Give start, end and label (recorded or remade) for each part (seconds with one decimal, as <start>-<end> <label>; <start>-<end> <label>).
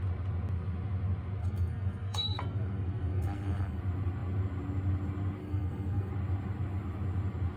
0.0-1.4 recorded; 1.4-3.8 remade; 3.8-5.4 recorded; 5.4-6.1 remade; 6.1-7.6 recorded